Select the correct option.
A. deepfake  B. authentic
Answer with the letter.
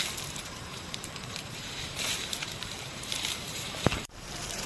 A